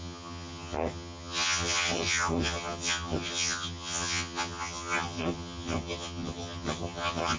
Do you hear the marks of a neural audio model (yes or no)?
yes